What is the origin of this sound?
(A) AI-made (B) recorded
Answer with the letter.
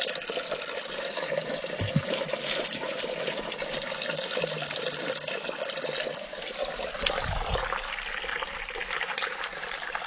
B